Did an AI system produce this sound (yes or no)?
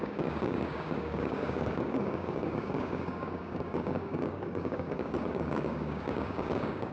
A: yes